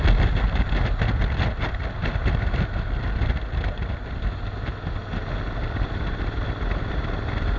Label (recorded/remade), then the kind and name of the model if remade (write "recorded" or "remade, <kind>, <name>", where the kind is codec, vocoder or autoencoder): recorded